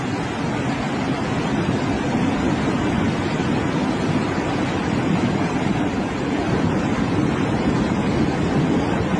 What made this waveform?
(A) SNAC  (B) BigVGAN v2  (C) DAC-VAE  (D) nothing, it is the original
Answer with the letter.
D